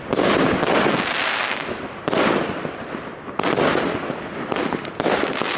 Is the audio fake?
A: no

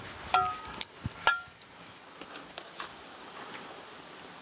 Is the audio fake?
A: no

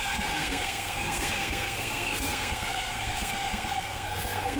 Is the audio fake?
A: yes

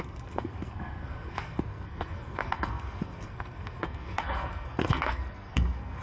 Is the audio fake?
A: yes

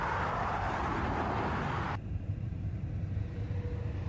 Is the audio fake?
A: no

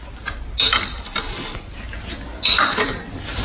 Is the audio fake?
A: no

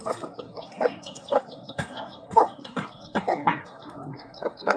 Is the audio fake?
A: yes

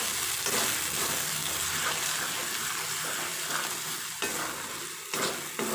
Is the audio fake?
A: no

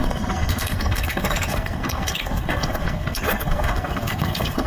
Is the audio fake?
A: yes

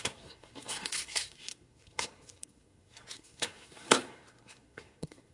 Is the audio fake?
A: yes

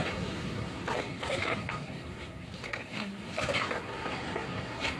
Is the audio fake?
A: yes